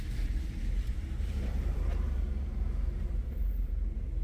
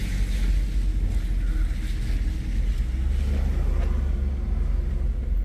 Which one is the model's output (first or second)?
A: first